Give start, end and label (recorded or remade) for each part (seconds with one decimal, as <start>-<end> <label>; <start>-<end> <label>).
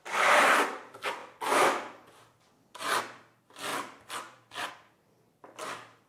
0.0-1.2 remade; 1.2-3.0 recorded; 3.0-6.1 remade